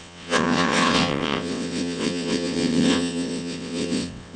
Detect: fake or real fake